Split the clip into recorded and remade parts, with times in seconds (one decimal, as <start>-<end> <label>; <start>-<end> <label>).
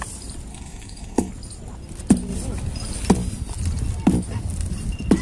0.0-0.5 recorded; 0.5-1.3 remade; 1.3-5.2 recorded